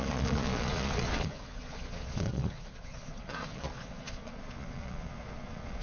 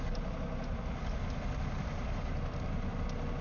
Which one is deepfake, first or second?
first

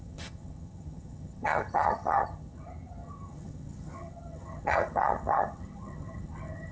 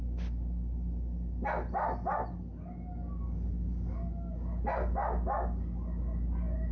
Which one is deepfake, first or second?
first